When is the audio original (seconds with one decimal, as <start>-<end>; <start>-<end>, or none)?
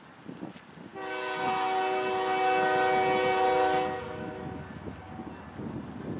0.0-6.2